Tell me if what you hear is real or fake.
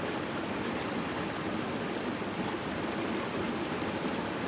real